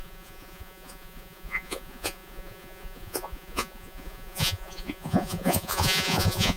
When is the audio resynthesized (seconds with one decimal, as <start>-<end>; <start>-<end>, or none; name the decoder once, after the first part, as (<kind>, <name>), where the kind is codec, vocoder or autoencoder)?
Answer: 0.0-6.6 (vocoder, Vocos)